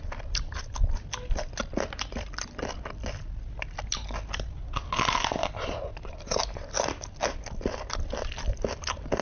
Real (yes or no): yes